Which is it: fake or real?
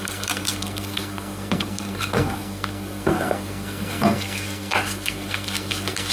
fake